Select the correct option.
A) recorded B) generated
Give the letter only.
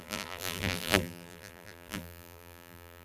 B